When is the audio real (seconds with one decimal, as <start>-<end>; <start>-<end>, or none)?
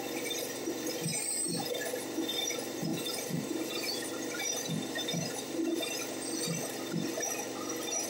0.0-1.1; 1.8-2.9; 6.0-8.1